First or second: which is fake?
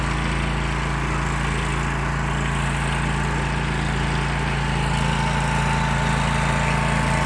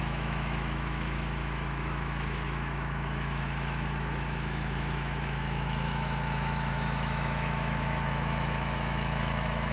second